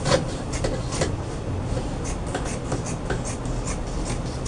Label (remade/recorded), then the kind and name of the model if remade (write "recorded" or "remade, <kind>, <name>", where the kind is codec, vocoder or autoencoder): recorded